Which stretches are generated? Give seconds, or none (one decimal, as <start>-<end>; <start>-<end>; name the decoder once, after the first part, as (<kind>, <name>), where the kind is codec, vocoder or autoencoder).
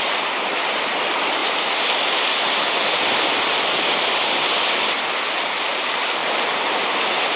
none